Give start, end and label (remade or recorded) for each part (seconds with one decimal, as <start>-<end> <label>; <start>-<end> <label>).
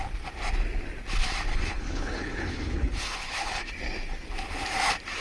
0.0-1.5 recorded; 1.5-3.7 remade; 3.7-5.2 recorded